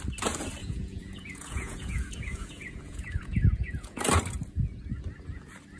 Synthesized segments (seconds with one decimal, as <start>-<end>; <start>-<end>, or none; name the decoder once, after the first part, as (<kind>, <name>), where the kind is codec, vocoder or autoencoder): 0.6-4.1 (vocoder, Vocos)